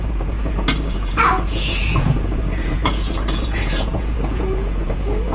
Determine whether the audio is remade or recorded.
remade